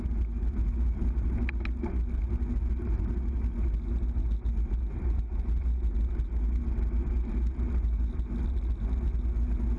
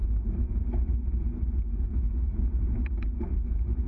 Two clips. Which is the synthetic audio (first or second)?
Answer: second